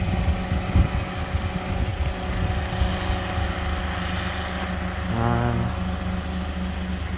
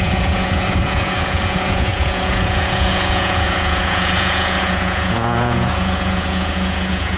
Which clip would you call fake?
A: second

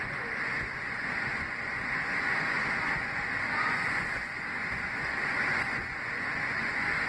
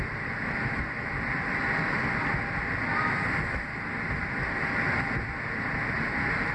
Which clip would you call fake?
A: first